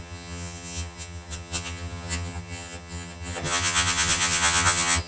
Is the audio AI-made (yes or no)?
yes